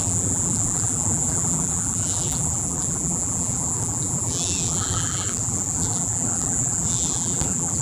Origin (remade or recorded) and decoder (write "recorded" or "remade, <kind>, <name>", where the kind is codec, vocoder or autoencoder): remade, vocoder, BigVGAN v2